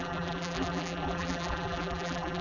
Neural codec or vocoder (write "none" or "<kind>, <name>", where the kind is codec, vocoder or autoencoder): vocoder, BigVGAN v2